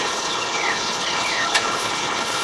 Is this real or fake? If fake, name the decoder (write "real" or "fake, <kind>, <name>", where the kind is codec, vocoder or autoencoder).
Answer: fake, codec, HILCodec